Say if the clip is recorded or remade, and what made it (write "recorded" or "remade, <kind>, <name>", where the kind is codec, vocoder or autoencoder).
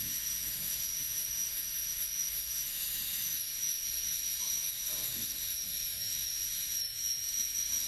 remade, autoencoder, DAC-VAE